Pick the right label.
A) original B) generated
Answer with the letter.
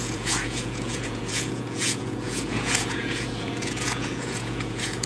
B